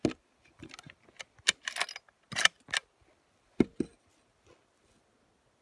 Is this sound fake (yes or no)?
no